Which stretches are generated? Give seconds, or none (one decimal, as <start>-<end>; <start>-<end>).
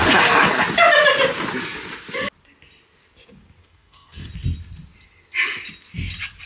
3.6-4.3